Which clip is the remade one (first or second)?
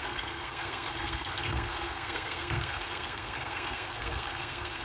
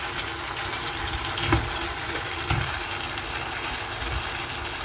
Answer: first